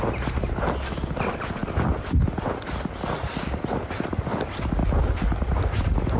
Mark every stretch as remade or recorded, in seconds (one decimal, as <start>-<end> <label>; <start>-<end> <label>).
0.0-6.2 recorded